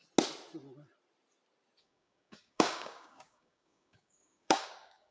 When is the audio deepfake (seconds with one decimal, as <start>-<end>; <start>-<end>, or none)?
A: 1.8-5.1